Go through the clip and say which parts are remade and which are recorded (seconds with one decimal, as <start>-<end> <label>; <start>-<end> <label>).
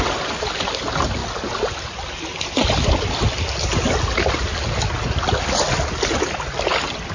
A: 0.0-7.1 recorded